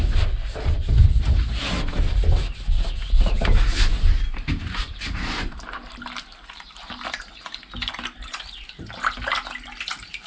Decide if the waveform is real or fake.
real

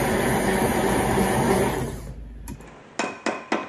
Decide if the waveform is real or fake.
real